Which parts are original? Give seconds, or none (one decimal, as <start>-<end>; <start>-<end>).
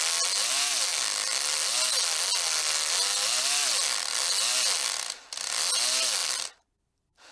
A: 0.0-7.3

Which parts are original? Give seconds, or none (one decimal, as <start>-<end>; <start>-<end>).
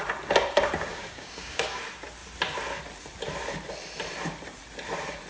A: 0.0-0.9; 1.8-5.3